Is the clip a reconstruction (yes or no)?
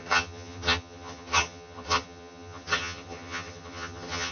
yes